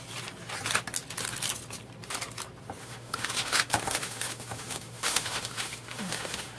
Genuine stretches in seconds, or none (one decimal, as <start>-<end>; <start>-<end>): 0.0-2.8